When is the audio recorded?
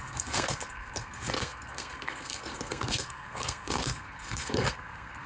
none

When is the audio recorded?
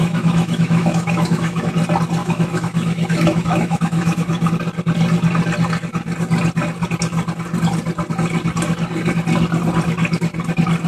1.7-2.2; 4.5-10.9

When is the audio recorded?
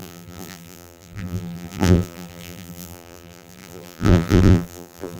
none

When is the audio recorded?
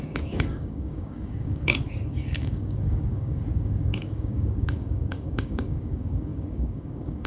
none